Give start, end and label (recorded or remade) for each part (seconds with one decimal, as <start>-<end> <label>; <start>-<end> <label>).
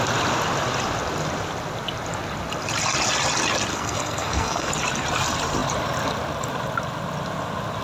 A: 0.0-3.7 recorded; 3.7-4.7 remade; 4.7-7.8 recorded